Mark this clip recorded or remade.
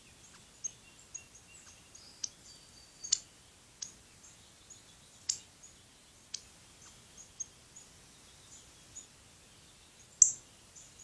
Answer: recorded